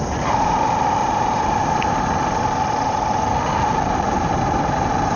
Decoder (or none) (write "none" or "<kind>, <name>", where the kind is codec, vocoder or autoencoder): none